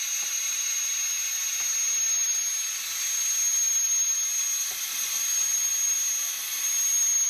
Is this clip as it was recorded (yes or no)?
yes